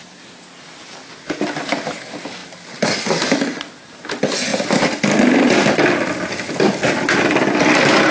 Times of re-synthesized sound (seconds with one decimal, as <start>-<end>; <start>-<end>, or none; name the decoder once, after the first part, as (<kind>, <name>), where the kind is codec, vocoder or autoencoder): none

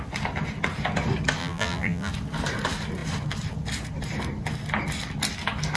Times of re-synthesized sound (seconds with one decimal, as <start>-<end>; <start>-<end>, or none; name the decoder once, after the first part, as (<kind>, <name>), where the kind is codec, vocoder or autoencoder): 1.4-2.1 (vocoder, BigVGAN v2)

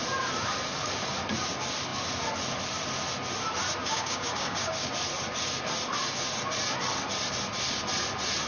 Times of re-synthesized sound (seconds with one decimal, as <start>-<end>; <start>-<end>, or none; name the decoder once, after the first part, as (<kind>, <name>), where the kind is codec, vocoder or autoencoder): 3.8-4.9 (codec, DAC)

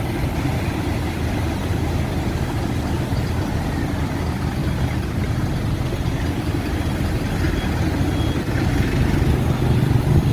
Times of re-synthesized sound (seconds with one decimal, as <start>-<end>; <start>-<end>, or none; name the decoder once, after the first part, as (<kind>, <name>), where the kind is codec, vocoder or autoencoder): 4.6-5.1 (vocoder, BigVGAN v2)

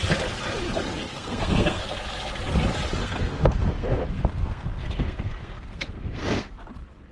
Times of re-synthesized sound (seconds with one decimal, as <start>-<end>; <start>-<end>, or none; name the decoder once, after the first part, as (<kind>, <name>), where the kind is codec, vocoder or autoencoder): 1.1-1.8 (codec, SNAC); 3.0-6.6

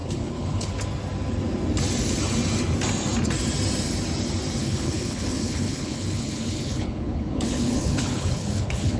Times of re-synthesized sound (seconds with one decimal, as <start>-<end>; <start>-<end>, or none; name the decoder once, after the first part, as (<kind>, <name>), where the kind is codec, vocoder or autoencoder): 0.0-0.7 (codec, HILCodec); 4.6-9.0

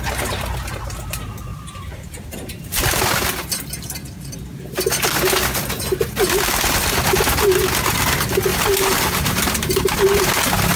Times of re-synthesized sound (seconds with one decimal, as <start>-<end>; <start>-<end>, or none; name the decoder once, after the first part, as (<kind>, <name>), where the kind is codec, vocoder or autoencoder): 1.5-3.0 (vocoder, BigVGAN v2); 8.5-10.0